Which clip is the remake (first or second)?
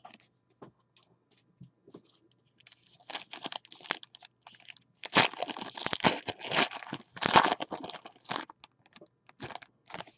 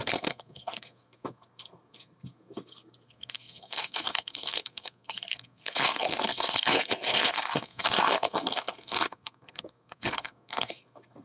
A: second